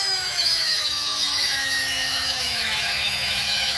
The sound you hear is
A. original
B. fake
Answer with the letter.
B